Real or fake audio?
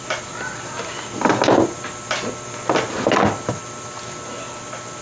real